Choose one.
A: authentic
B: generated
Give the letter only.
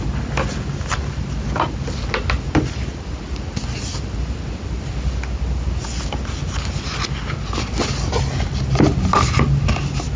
A